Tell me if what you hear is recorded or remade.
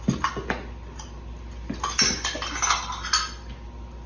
recorded